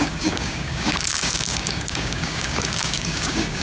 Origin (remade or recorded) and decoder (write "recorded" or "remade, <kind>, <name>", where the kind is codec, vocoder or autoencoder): remade, codec, DAC